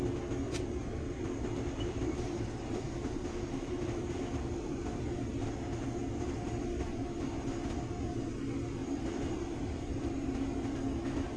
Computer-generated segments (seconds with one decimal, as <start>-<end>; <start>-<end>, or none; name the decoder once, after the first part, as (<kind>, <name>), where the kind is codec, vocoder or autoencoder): 0.5-5.0 (vocoder, BigVGAN v2); 8.8-10.3